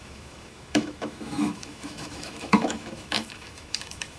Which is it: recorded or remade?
remade